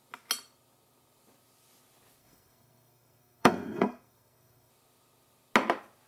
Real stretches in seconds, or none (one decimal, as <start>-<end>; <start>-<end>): 0.0-2.2; 4.7-6.1